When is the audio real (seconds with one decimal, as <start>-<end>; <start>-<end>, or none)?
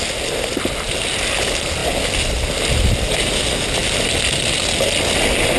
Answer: 0.0-5.6